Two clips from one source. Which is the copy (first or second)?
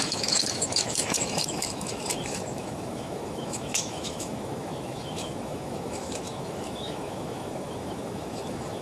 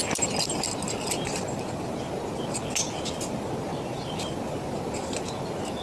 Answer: first